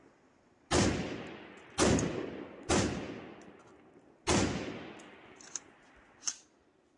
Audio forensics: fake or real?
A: real